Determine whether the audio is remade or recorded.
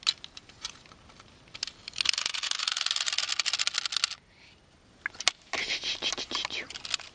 recorded